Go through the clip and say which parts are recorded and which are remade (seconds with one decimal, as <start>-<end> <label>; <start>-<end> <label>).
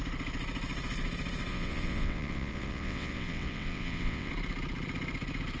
0.0-1.5 recorded; 1.5-4.3 remade; 4.3-5.6 recorded